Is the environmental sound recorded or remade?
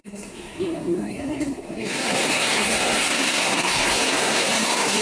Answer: remade